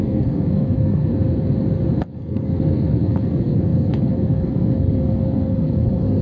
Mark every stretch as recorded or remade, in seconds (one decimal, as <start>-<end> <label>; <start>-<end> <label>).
0.0-1.1 remade; 1.1-2.1 recorded; 2.1-6.2 remade

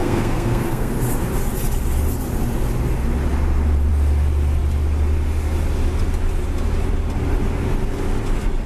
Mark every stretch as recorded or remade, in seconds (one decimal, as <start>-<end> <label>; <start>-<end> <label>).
0.0-0.9 remade; 0.9-8.7 recorded

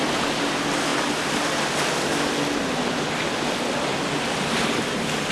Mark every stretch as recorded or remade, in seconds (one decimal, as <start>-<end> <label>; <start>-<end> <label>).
0.0-5.3 recorded